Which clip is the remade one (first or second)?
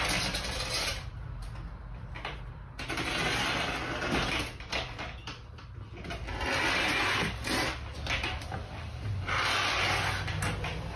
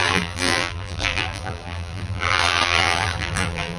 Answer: second